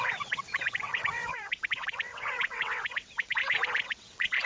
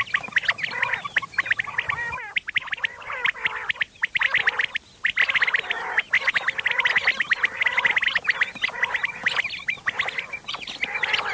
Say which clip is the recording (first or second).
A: second